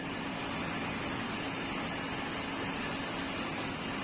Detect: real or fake real